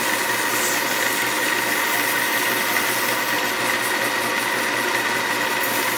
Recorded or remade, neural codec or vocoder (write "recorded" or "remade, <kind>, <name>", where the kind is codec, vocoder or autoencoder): recorded